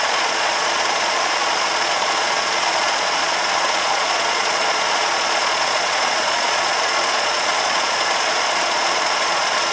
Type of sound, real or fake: fake